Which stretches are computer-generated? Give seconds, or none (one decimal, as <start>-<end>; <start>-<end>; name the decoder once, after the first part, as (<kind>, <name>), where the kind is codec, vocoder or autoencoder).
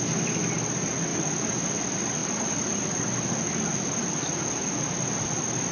none